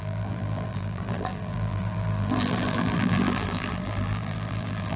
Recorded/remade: remade